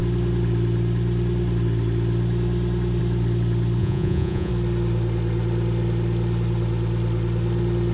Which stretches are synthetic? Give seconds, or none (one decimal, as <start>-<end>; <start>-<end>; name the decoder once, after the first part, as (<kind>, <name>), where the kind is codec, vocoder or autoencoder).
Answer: 3.8-4.5 (vocoder, Vocos)